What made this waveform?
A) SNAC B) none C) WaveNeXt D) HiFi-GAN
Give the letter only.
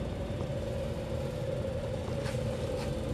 B